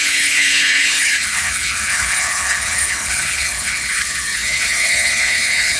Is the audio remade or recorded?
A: remade